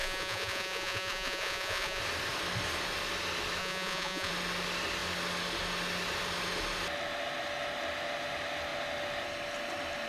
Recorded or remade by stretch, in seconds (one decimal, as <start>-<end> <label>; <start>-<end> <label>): 0.0-2.0 remade; 2.0-3.6 recorded; 3.6-4.3 remade; 4.3-10.1 recorded